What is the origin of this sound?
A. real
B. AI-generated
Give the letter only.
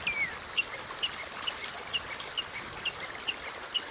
A